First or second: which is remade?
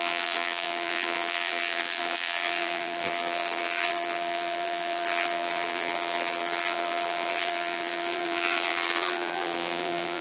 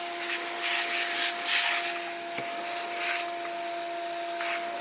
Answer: first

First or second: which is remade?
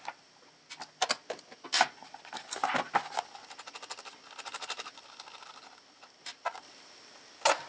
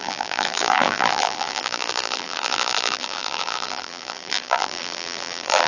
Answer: second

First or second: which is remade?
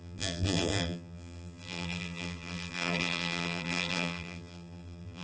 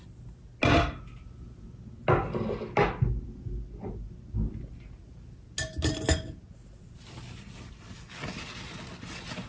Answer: first